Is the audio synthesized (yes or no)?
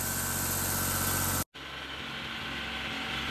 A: no